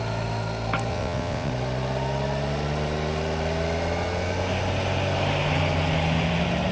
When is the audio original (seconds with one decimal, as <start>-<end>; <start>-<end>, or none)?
0.0-0.9; 1.5-6.7